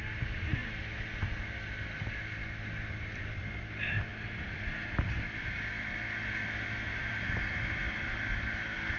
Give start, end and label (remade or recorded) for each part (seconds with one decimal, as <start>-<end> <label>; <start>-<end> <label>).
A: 0.0-4.1 recorded; 4.1-5.2 remade; 5.2-7.0 recorded; 7.0-7.6 remade; 7.6-9.0 recorded